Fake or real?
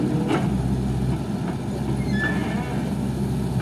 real